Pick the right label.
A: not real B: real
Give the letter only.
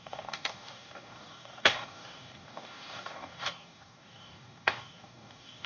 A